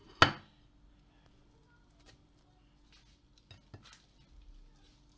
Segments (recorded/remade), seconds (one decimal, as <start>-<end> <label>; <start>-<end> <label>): 0.0-5.2 recorded